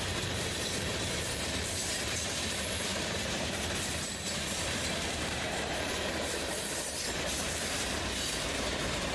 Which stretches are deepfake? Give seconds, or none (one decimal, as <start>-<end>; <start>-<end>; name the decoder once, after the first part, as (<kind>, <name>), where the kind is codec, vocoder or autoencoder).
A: 0.0-9.1 (vocoder, BigVGAN v2)

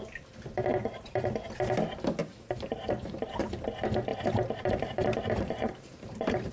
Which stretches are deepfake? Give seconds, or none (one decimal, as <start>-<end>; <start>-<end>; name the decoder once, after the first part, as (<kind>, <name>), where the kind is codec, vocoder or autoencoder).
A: 0.7-1.3 (vocoder, BigVGAN v2); 2.2-3.5; 4.1-6.5

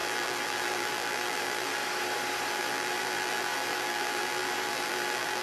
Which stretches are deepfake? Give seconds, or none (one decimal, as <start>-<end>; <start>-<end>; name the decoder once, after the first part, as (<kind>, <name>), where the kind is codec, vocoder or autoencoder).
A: 0.0-1.8 (vocoder, BigVGAN v2); 2.5-5.4

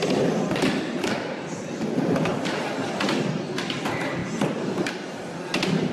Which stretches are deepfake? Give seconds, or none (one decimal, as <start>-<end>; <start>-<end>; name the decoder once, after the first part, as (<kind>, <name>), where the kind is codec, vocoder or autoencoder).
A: none

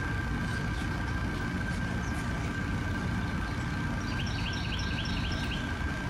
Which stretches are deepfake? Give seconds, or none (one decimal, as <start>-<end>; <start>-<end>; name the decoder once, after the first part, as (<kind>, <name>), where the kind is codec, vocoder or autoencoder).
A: none

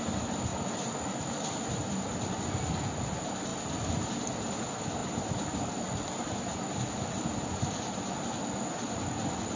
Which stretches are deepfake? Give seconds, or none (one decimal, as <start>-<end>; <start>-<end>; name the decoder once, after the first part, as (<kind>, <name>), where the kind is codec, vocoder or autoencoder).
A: 3.5-4.6 (vocoder, BigVGAN v2); 5.0-5.7

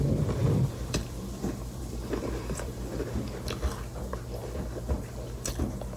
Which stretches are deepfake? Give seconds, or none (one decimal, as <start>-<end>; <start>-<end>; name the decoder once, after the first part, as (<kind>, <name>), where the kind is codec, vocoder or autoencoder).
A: 0.4-3.1 (vocoder, BigVGAN v2)

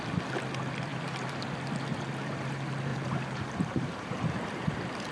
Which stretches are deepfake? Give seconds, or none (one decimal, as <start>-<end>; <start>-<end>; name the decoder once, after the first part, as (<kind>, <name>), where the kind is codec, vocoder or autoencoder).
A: 0.9-1.5 (vocoder, BigVGAN v2); 2.9-4.1